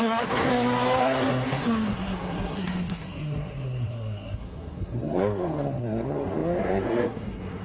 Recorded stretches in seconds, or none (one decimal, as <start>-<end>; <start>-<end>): 0.5-1.0

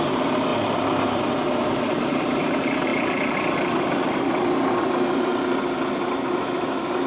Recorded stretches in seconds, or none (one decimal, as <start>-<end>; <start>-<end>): 0.5-1.5; 5.3-7.1

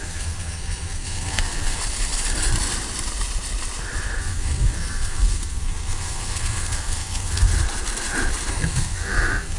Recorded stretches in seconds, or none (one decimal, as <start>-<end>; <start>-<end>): 1.8-4.2; 7.5-8.5

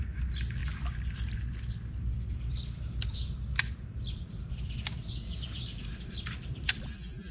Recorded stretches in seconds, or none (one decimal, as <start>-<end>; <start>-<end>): 0.0-7.3